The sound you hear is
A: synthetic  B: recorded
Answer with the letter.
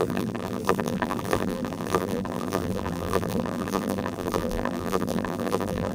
A